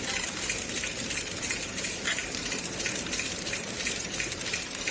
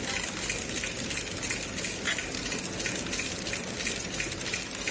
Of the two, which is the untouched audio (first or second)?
second